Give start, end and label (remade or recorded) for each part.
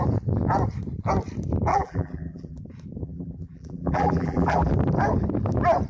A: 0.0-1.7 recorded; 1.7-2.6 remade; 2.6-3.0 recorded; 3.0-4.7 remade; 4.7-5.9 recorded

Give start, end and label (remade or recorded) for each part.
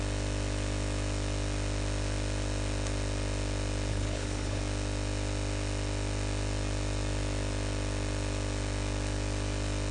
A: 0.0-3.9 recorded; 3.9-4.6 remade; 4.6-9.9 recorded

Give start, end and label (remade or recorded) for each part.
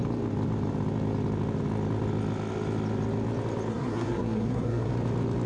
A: 0.0-3.7 recorded; 3.7-4.9 remade; 4.9-5.5 recorded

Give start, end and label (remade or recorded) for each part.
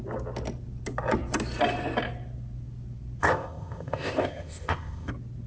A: 0.0-3.2 recorded; 3.2-5.1 remade; 5.1-5.5 recorded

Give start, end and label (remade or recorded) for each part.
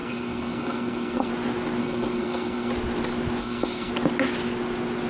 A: 0.0-1.3 remade; 1.3-1.8 recorded; 1.8-2.7 remade; 2.7-3.4 recorded; 3.4-3.9 remade; 3.9-5.1 recorded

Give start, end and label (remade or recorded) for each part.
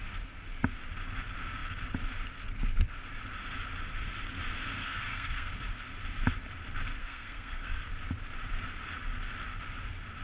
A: 0.0-4.8 recorded; 4.8-5.5 remade; 5.5-7.0 recorded; 7.0-7.9 remade; 7.9-10.2 recorded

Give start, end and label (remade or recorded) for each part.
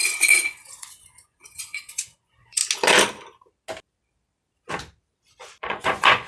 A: 0.0-2.6 remade; 2.6-5.6 recorded; 5.6-6.3 remade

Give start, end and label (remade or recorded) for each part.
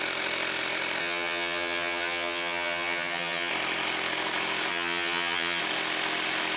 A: 0.0-1.0 recorded; 1.0-3.5 remade; 3.5-4.7 recorded; 4.7-5.6 remade; 5.6-6.6 recorded